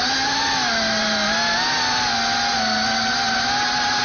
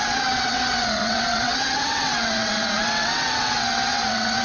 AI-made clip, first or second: second